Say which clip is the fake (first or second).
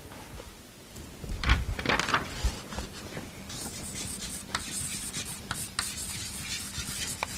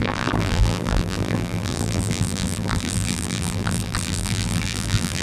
second